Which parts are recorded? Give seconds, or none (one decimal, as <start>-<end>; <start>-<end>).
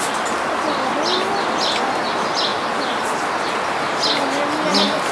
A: 0.0-5.1